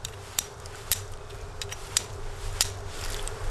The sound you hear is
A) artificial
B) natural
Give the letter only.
A